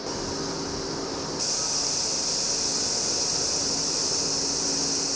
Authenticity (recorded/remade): recorded